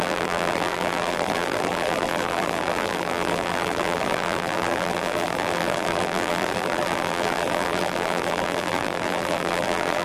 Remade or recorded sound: remade